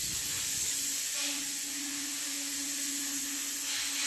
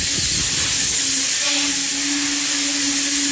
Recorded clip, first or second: second